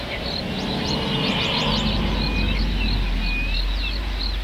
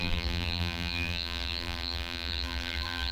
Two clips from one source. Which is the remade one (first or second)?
second